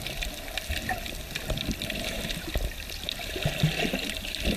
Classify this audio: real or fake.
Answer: real